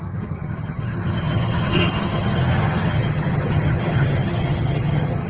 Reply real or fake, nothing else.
fake